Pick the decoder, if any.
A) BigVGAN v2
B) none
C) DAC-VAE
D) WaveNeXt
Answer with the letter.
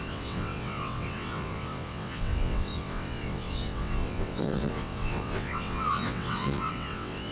D